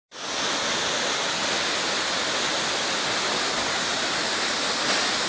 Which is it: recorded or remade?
recorded